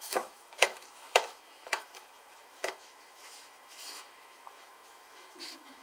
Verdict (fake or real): fake